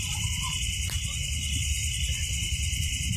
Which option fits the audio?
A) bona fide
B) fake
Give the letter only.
B